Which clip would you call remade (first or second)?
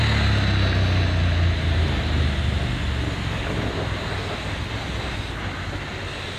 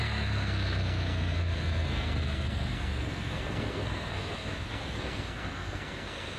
second